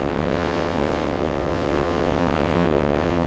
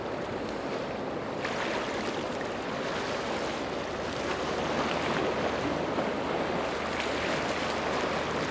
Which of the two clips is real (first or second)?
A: second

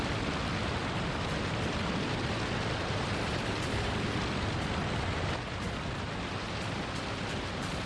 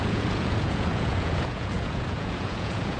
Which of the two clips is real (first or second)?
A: first